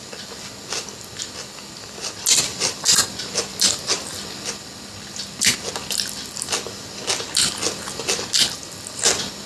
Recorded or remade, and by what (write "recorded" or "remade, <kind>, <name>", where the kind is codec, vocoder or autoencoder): recorded